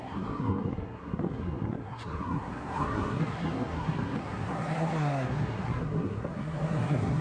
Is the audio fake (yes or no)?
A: yes